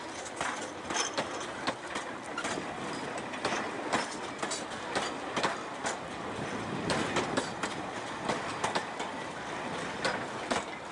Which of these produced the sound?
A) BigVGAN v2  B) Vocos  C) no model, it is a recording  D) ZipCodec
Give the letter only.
C